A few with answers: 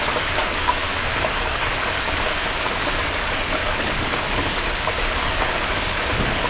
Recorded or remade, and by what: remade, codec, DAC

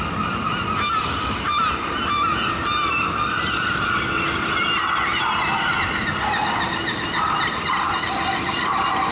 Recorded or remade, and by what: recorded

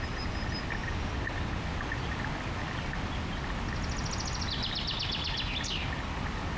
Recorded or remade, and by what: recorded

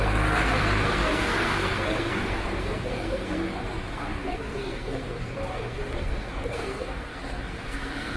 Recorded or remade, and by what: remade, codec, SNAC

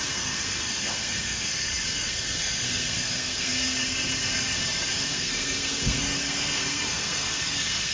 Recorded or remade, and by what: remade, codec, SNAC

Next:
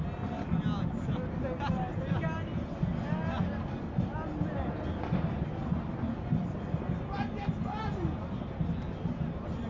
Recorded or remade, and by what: recorded